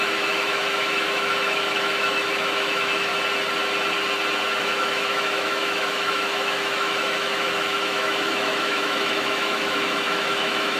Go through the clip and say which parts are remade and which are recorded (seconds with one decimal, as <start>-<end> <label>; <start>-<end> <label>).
0.0-3.1 remade; 3.1-4.6 recorded; 4.6-10.8 remade